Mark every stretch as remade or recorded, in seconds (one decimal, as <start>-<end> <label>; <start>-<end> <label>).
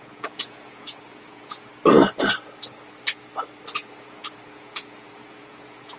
0.0-1.7 remade; 1.7-3.7 recorded; 3.7-6.0 remade